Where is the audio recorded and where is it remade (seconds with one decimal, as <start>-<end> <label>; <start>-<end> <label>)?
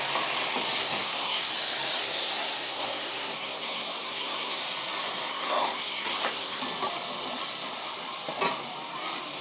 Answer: 0.0-0.8 recorded; 0.8-1.5 remade; 1.5-2.0 recorded; 2.0-4.6 remade; 4.6-5.3 recorded; 5.3-6.6 remade; 6.6-9.4 recorded